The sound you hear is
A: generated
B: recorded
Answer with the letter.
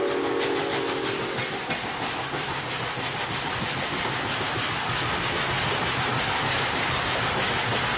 B